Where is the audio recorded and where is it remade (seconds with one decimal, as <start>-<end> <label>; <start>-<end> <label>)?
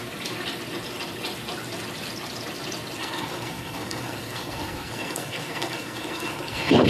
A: 0.0-3.0 recorded; 3.0-6.9 remade